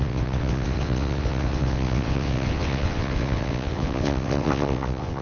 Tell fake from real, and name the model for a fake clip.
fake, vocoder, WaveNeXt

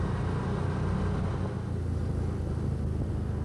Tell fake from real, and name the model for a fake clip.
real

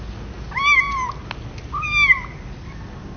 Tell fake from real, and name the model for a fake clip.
real